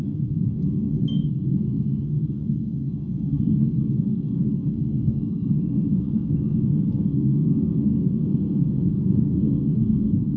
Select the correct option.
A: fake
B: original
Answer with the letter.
A